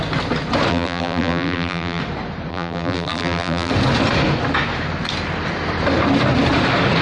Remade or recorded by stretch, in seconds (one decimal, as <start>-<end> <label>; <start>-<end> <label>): 0.0-0.7 recorded; 0.7-2.0 remade; 2.0-2.5 recorded; 2.5-3.7 remade; 3.7-7.0 recorded